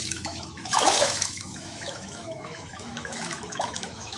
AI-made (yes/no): yes